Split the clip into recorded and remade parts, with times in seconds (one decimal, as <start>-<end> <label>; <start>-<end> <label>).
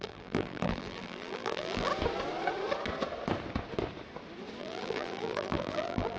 0.0-1.9 remade; 1.9-4.6 recorded; 4.6-6.2 remade